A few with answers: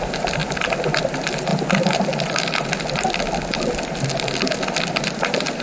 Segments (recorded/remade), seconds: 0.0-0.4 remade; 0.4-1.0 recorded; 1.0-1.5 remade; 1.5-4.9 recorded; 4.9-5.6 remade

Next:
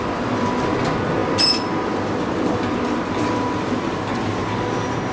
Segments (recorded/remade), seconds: 0.0-5.1 recorded

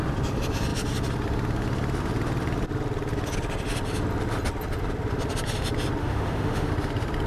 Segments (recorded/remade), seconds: 0.0-6.0 recorded; 6.0-6.7 remade; 6.7-7.3 recorded

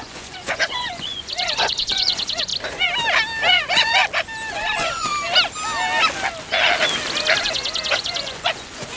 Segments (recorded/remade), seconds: 0.0-2.5 remade; 2.5-3.5 recorded; 3.5-4.0 remade; 4.0-4.5 recorded; 4.5-5.1 remade; 5.1-7.4 recorded; 7.4-9.0 remade

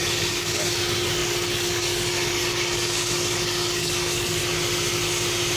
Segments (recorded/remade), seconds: 0.0-4.4 remade; 4.4-5.6 recorded

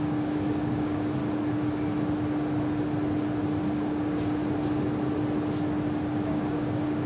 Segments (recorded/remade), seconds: 0.0-1.2 remade; 1.2-3.6 recorded; 3.6-4.4 remade; 4.4-6.3 recorded; 6.3-7.1 remade

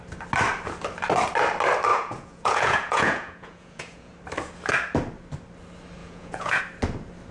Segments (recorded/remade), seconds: 0.0-1.9 recorded; 1.9-4.1 remade; 4.1-6.0 recorded; 6.0-6.6 remade; 6.6-7.3 recorded